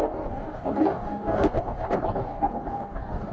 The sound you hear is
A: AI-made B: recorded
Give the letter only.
A